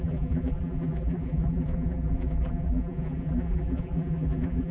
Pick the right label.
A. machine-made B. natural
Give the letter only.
A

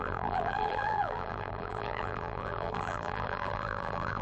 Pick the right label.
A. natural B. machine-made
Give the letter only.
B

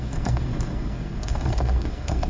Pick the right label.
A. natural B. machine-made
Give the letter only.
B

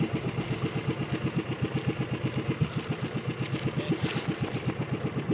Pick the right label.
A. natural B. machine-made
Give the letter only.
A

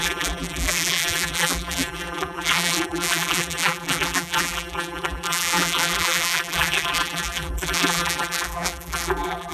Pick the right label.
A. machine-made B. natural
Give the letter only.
A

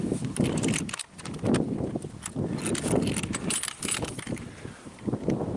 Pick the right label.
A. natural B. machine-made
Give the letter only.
A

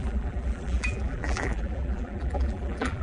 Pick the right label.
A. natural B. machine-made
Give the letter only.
B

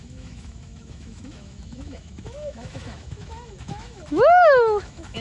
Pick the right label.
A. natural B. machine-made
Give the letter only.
B